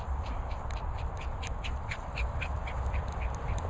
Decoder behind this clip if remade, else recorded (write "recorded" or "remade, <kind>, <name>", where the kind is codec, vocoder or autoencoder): remade, vocoder, BigVGAN v2